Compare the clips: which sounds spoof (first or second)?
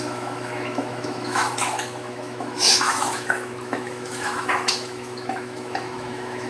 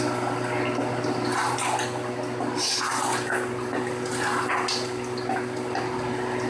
first